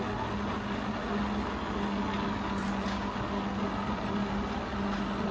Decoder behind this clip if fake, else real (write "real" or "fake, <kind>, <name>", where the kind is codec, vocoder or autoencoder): real